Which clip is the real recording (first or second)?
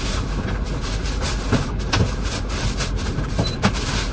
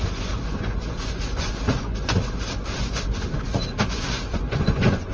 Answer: first